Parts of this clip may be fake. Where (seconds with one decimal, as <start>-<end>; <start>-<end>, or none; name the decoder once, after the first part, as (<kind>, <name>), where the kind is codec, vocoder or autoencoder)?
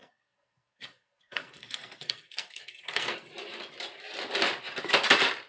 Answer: 0.0-3.3 (codec, SNAC)